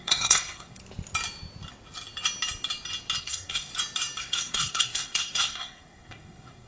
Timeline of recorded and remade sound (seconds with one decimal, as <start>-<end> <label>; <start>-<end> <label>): 0.0-0.8 remade; 0.8-3.2 recorded; 3.2-3.7 remade; 3.7-4.2 recorded; 4.2-6.7 remade